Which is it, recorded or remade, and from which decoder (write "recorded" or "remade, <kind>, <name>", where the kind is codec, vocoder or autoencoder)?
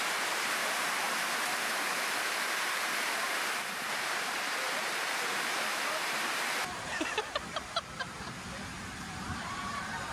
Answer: remade, vocoder, BigVGAN v2